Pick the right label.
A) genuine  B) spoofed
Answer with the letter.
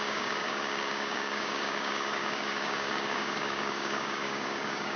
B